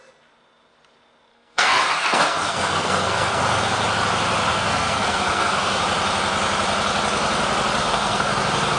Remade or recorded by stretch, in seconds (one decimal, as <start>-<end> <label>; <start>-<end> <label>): 0.0-1.3 recorded; 1.3-3.6 remade; 3.6-4.5 recorded; 4.5-5.8 remade; 5.8-7.8 recorded; 7.8-8.4 remade; 8.4-8.8 recorded